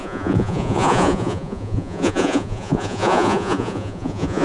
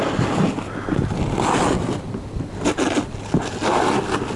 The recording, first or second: second